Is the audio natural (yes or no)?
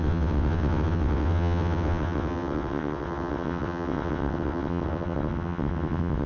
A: no